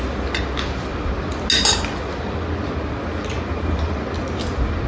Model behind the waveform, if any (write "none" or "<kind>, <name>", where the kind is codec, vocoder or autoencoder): none